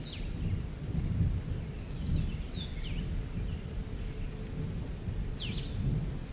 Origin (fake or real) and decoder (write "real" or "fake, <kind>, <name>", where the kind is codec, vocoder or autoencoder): real